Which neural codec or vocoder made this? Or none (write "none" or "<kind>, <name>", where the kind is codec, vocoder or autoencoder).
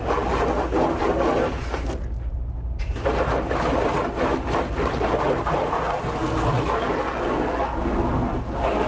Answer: none